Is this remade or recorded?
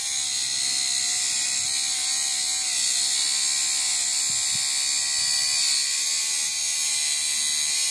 recorded